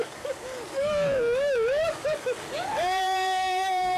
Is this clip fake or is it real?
fake